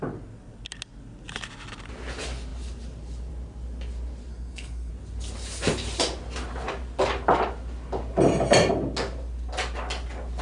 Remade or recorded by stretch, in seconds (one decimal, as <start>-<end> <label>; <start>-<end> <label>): 0.0-4.3 recorded; 4.3-4.9 remade; 4.9-10.4 recorded